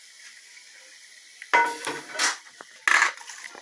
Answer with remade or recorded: recorded